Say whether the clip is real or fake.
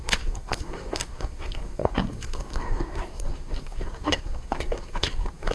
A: fake